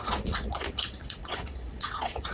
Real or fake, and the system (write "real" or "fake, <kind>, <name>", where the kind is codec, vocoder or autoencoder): fake, vocoder, Vocos